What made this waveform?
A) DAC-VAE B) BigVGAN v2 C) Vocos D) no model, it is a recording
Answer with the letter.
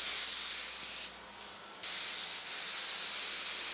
D